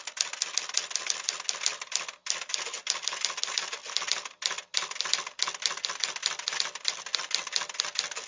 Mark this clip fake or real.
real